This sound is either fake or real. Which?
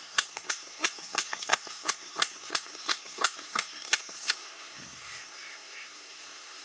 fake